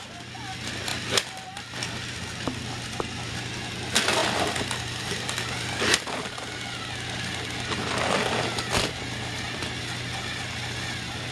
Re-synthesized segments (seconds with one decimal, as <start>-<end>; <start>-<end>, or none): none